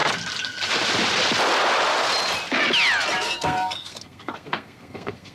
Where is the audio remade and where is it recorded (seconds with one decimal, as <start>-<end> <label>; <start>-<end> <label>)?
0.0-3.2 recorded; 3.2-5.3 remade